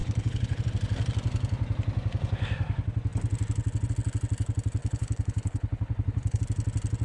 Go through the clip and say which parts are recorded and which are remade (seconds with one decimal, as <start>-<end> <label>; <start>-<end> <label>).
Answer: 0.0-0.6 remade; 0.6-4.8 recorded; 4.8-6.4 remade; 6.4-7.0 recorded